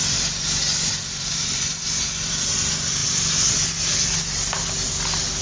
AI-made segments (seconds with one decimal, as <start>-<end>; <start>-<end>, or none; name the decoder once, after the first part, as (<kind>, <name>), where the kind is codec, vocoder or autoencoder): none